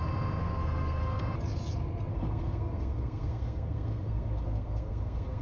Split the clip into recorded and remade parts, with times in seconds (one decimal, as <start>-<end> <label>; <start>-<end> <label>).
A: 0.0-0.4 recorded; 0.4-1.2 remade; 1.2-2.1 recorded; 2.1-5.4 remade